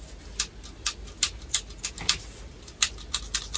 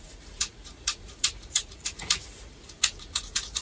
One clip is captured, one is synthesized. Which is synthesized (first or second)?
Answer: second